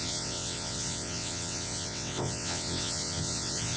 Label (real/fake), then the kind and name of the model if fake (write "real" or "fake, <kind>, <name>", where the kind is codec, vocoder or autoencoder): fake, vocoder, WaveNeXt